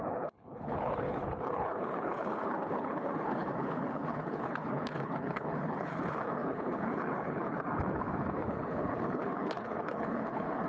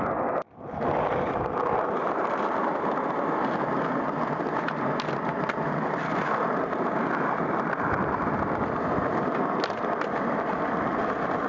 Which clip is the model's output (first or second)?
first